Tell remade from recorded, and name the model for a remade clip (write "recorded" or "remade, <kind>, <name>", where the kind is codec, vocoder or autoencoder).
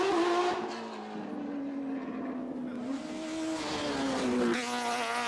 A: recorded